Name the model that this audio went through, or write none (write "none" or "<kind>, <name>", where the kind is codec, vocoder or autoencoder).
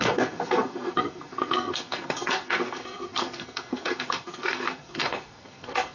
codec, SNAC